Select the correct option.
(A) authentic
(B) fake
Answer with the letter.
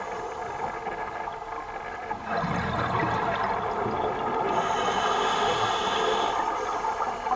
A